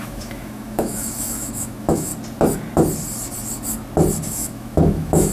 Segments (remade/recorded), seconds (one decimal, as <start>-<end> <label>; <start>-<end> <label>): 0.0-2.1 remade; 2.1-4.3 recorded; 4.3-5.3 remade